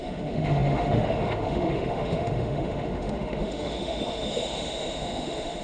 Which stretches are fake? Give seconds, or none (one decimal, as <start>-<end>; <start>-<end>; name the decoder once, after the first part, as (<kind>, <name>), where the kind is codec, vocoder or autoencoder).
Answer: 0.0-5.6 (autoencoder, DAC-VAE)